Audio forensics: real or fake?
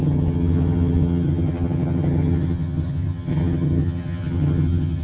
fake